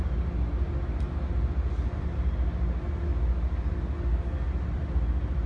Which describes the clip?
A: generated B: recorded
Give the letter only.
B